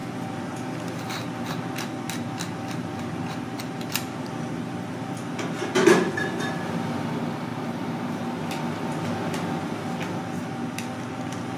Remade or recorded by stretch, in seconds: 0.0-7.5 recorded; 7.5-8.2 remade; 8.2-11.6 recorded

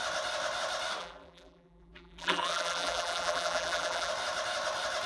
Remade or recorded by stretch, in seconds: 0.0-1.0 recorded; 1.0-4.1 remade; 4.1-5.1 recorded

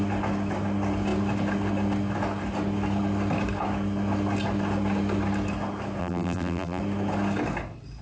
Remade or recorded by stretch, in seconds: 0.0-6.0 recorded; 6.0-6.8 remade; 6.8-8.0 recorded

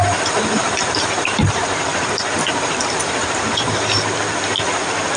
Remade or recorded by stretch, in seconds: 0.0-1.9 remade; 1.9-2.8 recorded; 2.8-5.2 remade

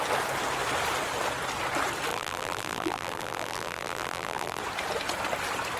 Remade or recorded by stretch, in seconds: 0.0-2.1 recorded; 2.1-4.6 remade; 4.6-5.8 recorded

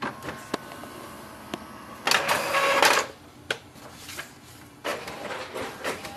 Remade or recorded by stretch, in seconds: 0.0-4.9 recorded; 4.9-5.5 remade; 5.5-6.2 recorded

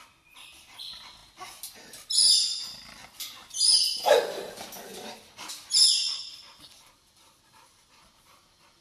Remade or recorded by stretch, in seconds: 0.0-1.2 remade; 1.2-5.8 recorded; 5.8-8.8 remade

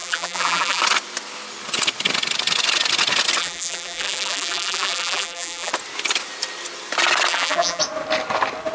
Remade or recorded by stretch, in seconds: 0.0-0.8 remade; 0.8-3.4 recorded; 3.4-5.7 remade; 5.7-7.3 recorded; 7.3-7.8 remade; 7.8-8.7 recorded